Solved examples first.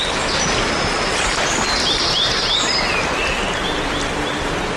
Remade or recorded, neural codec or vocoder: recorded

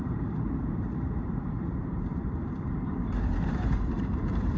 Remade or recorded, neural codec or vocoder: remade, vocoder, BigVGAN v2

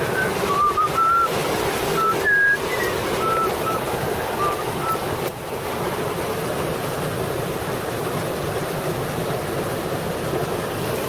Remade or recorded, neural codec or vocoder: recorded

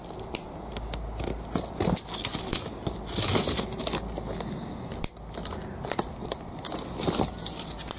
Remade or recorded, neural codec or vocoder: recorded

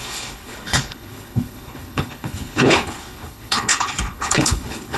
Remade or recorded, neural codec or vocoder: remade, codec, HILCodec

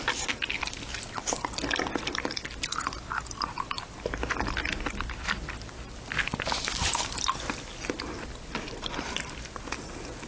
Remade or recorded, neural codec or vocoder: recorded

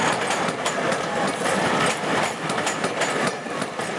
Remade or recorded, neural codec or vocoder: remade, vocoder, BigVGAN v2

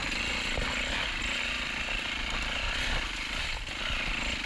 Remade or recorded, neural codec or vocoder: recorded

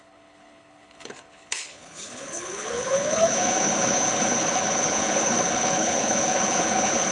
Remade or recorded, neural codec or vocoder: remade, codec, HILCodec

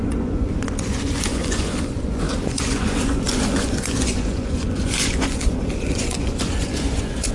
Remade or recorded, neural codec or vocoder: remade, vocoder, Vocos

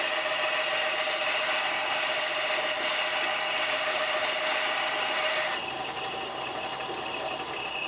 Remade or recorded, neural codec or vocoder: recorded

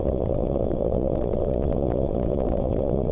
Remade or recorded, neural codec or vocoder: remade, vocoder, WaveNeXt